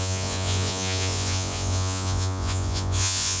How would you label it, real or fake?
fake